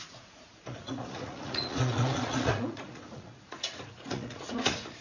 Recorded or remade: remade